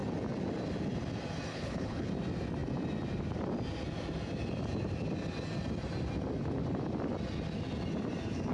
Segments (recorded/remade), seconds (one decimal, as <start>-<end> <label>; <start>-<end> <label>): 0.0-1.5 recorded; 1.5-2.1 remade; 2.1-8.5 recorded